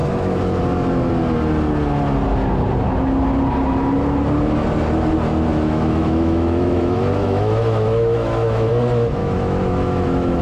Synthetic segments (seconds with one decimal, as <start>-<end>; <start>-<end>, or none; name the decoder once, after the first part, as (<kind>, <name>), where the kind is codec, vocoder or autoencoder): 0.0-0.6 (autoencoder, DAC-VAE); 5.5-8.7; 9.2-10.4